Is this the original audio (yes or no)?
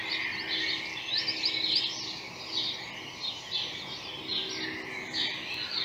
yes